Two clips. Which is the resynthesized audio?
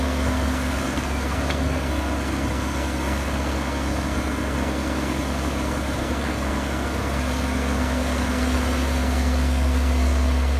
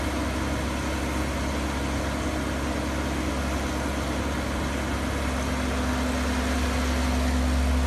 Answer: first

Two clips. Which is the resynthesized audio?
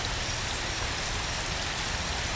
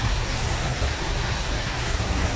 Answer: second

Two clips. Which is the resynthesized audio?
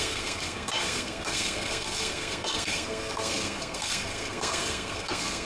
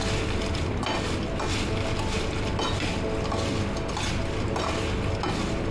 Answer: first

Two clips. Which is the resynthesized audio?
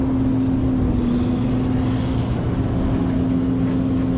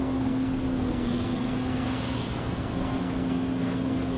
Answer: second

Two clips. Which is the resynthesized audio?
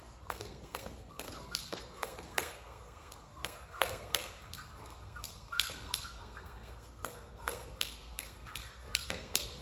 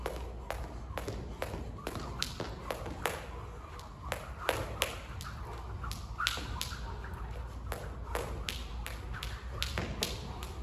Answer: first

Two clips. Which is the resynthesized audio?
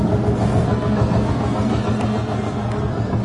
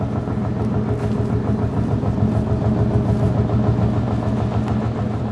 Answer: first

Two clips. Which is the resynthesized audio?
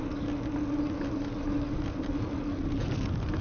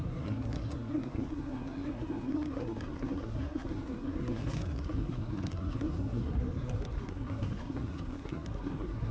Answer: second